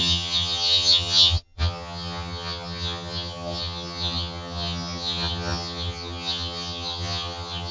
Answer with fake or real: fake